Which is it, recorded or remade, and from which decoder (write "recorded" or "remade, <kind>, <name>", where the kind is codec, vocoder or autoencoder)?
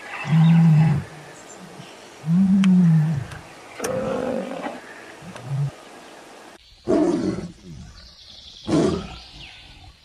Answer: remade, vocoder, Vocos